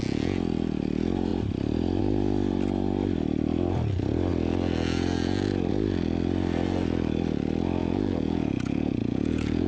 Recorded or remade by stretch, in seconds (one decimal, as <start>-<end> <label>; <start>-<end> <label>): 0.0-7.8 recorded; 7.8-9.7 remade